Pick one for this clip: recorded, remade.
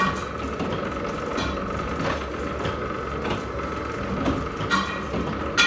recorded